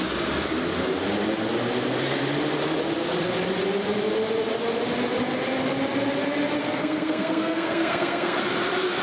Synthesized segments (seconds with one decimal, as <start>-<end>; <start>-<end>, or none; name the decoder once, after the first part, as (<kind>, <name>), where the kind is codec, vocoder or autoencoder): 6.6-8.4 (codec, SNAC)